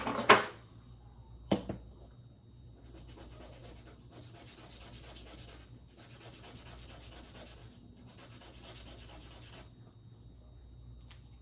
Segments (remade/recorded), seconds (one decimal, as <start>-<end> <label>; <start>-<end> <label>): 0.0-11.4 recorded